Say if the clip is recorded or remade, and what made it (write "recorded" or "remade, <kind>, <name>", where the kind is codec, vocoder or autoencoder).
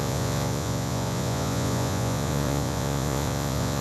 remade, vocoder, Vocos